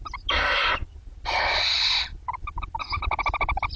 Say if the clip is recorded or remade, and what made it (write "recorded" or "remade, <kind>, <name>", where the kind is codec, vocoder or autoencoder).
recorded